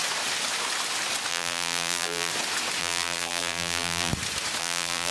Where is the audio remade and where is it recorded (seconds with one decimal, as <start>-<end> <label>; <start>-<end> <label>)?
0.0-1.3 recorded; 1.3-2.3 remade; 2.3-2.8 recorded; 2.8-4.1 remade; 4.1-4.6 recorded; 4.6-5.1 remade

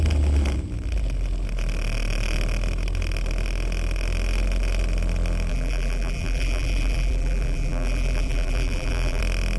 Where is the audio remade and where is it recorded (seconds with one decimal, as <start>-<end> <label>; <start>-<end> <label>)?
0.0-5.5 recorded; 5.5-9.2 remade; 9.2-9.6 recorded

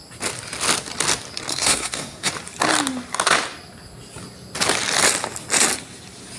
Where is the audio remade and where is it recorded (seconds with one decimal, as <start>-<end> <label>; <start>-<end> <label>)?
0.0-1.5 recorded; 1.5-2.3 remade; 2.3-6.4 recorded